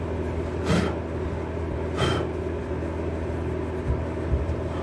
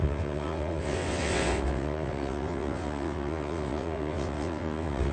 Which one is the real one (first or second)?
first